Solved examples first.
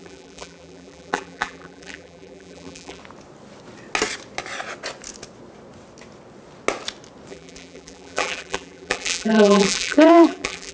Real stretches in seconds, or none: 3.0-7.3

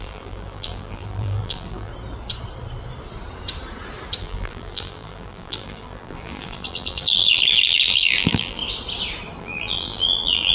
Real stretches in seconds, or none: 1.9-4.2; 8.6-9.4

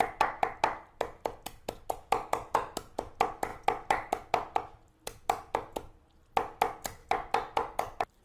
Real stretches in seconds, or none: 0.0-7.0

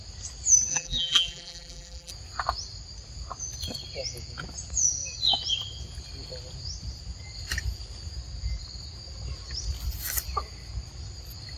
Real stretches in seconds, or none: 0.0-0.7; 2.1-11.6

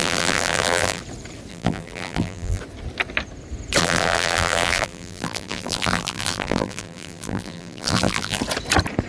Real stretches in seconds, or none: 1.0-1.5; 2.6-3.8; 8.4-9.1